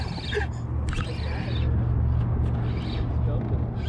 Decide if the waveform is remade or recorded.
recorded